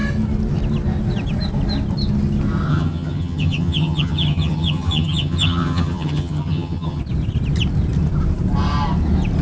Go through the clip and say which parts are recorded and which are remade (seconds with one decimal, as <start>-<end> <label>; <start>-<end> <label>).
0.0-2.7 recorded; 2.7-7.0 remade; 7.0-9.4 recorded